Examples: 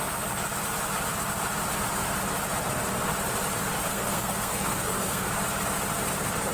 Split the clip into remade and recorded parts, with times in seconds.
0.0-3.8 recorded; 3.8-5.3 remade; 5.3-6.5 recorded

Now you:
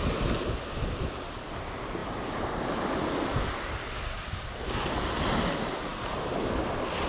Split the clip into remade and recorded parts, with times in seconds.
0.0-7.1 recorded